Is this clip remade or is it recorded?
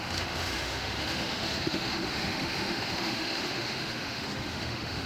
remade